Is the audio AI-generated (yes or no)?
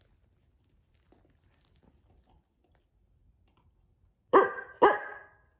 no